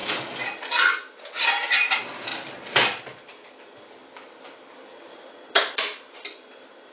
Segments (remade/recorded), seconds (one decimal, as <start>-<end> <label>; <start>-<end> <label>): 0.0-6.9 recorded

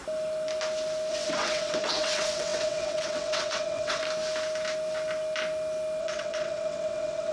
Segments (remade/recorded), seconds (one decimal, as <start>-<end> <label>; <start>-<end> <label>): 0.0-1.1 recorded; 1.1-4.0 remade; 4.0-6.0 recorded; 6.0-7.3 remade

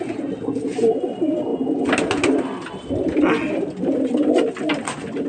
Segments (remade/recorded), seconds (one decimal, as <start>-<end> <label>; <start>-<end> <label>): 0.0-5.3 recorded